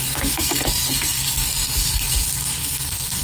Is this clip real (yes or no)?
no